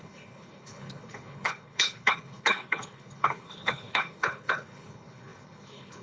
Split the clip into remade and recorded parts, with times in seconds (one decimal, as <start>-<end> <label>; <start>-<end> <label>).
0.0-6.0 remade